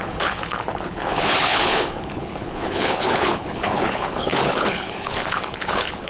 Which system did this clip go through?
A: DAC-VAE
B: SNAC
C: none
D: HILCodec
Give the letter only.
D